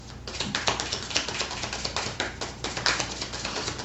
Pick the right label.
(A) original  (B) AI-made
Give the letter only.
B